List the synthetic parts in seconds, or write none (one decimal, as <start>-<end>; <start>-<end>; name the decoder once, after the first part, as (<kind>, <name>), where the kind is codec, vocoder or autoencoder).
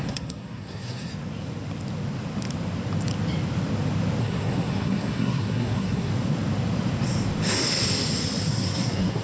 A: 0.0-1.1 (codec, SNAC); 4.2-6.1; 8.4-9.2